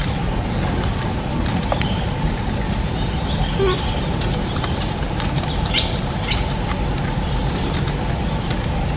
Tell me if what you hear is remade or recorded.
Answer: recorded